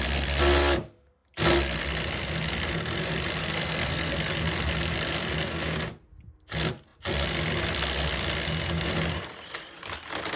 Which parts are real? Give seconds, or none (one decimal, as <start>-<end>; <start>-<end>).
0.0-3.4; 4.3-10.4